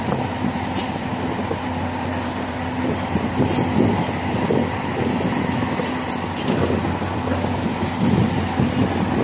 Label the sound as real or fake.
real